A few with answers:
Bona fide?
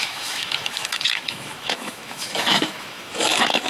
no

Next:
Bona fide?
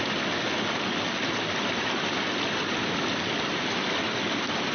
yes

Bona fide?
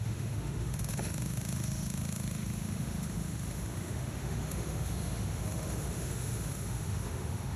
no